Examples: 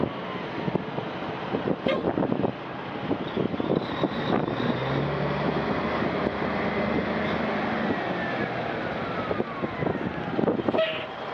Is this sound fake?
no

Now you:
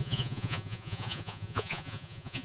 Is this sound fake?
yes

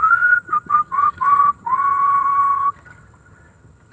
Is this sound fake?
yes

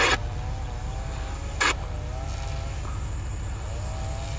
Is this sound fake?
no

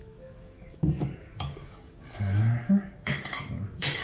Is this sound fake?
yes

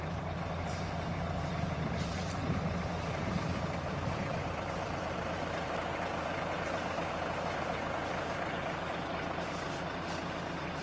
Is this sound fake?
yes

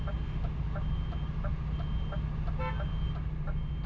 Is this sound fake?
no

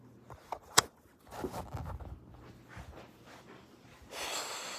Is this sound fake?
no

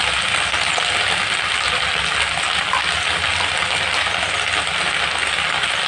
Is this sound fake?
no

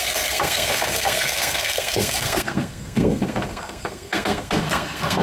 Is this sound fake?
yes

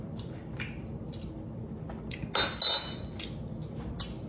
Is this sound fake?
no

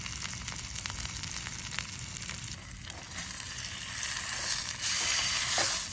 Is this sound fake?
no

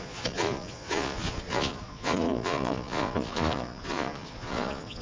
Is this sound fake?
yes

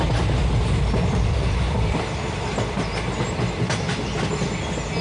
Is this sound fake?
no